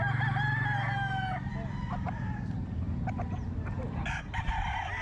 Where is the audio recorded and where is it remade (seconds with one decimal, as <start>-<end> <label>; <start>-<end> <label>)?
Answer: 0.0-1.5 recorded; 1.5-4.5 remade; 4.5-5.0 recorded